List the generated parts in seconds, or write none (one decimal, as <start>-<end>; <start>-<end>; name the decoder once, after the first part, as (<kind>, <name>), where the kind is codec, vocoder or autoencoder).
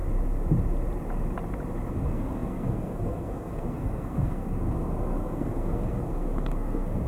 1.9-7.1 (codec, SNAC)